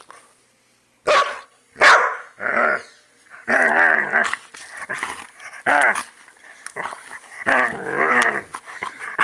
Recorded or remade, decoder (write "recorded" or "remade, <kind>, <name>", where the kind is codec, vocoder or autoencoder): recorded